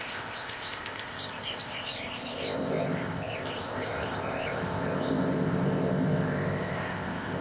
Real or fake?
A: fake